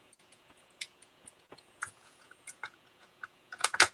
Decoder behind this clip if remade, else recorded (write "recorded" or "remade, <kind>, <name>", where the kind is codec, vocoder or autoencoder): remade, vocoder, Vocos